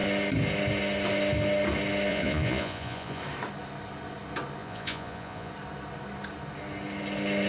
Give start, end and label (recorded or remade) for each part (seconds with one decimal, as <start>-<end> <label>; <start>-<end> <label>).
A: 0.0-2.1 recorded; 2.1-3.2 remade; 3.2-4.6 recorded; 4.6-5.5 remade; 5.5-7.5 recorded